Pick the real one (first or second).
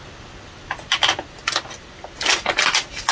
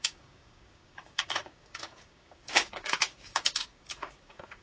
first